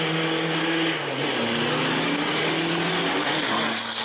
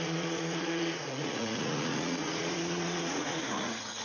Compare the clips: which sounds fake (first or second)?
second